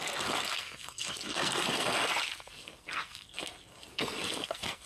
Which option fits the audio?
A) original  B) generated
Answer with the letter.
B